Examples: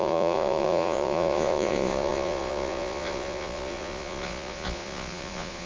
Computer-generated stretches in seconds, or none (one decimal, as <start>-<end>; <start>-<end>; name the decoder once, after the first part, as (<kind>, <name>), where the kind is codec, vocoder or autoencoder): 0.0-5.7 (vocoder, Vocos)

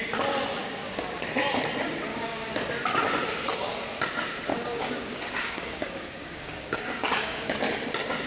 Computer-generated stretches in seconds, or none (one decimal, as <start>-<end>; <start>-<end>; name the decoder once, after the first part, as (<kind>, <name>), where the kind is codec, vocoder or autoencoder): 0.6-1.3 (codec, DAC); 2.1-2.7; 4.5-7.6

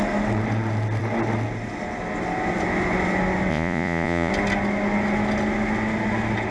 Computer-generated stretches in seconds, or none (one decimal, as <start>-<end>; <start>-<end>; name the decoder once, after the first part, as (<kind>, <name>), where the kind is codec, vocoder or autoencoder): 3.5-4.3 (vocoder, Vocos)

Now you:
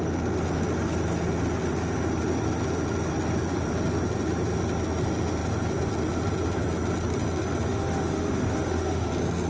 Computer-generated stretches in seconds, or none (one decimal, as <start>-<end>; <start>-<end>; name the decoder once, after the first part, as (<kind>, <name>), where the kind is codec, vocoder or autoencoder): 7.7-9.1 (autoencoder, DAC-VAE)

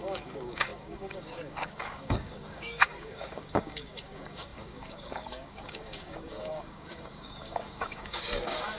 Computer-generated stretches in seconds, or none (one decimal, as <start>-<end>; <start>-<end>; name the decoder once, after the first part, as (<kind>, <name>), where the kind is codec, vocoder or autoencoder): 0.0-8.8 (codec, DAC)